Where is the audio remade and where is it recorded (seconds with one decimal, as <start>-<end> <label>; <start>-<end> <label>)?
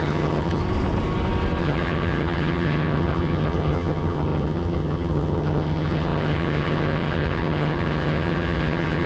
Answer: 0.0-0.6 remade; 0.6-1.6 recorded; 1.6-9.1 remade